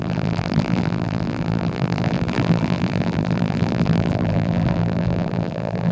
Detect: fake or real fake